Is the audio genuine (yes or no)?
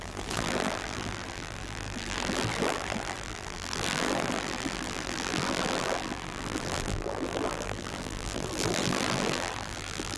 no